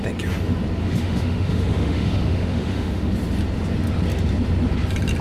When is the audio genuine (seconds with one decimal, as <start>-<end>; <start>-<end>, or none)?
0.0-0.8; 3.1-5.2